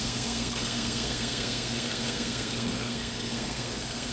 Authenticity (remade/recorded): remade